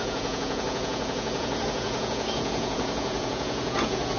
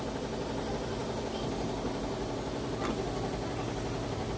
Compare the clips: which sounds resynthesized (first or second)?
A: first